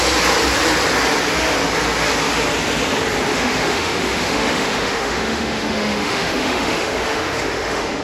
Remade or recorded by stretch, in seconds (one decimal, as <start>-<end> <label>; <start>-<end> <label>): 0.0-3.3 recorded; 3.3-8.0 remade